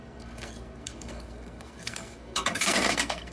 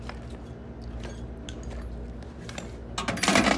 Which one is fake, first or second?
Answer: first